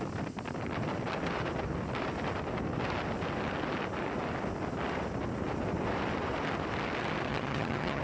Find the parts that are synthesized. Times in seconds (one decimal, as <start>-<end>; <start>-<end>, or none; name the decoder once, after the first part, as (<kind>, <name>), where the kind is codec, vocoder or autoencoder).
7.3-8.0 (vocoder, HiFi-GAN)